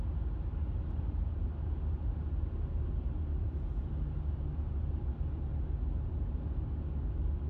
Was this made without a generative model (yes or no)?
yes